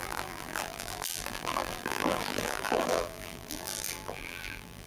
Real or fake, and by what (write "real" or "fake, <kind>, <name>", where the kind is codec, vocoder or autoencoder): fake, vocoder, BigVGAN v2